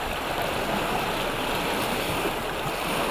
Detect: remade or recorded recorded